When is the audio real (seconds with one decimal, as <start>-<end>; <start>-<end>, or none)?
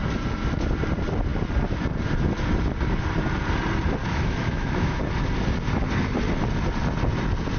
0.0-4.0; 5.0-7.6